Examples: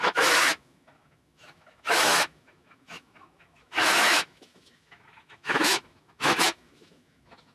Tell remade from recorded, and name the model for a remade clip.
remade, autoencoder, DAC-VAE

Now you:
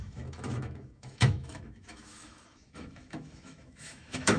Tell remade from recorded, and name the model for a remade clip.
remade, autoencoder, DAC-VAE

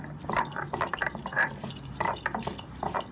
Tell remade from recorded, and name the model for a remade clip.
recorded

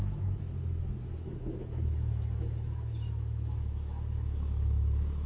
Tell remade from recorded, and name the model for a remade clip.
remade, autoencoder, DAC-VAE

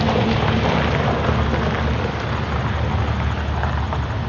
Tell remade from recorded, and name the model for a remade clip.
recorded